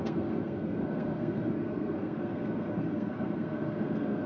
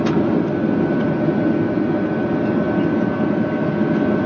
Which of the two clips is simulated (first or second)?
first